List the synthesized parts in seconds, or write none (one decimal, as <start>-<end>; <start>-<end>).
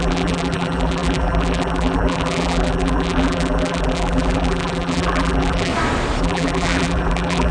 0.0-5.7; 6.2-7.5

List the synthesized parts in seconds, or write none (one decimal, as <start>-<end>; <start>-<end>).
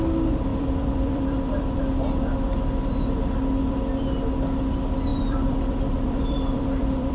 0.5-1.8; 5.1-7.1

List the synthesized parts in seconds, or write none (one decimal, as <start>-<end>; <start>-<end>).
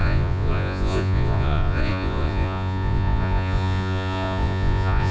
0.0-5.1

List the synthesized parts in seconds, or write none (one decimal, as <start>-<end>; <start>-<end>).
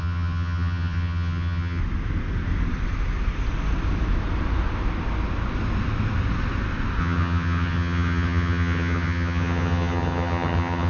0.0-1.8; 7.0-10.9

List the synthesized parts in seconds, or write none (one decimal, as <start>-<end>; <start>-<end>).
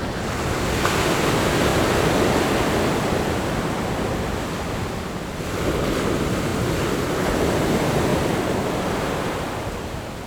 1.7-2.2; 8.1-9.5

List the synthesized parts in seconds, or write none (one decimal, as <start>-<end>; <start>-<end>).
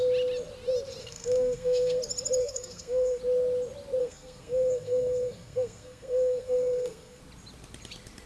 1.0-2.0; 2.4-3.2; 4.0-7.2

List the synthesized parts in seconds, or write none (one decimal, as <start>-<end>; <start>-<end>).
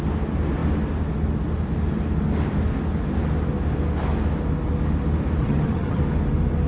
5.4-6.0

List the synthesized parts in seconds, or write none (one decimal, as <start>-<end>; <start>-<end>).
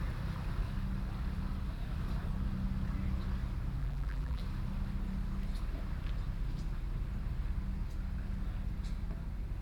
3.8-4.4